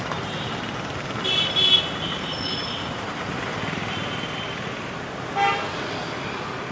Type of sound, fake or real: real